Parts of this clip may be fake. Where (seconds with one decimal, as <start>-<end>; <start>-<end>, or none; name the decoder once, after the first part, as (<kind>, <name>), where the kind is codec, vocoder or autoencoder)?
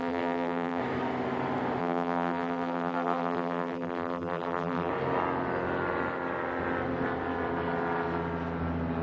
0.0-0.8 (vocoder, BigVGAN v2); 1.8-4.9